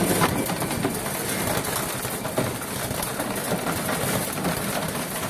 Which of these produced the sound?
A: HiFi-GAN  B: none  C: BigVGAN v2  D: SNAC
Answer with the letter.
C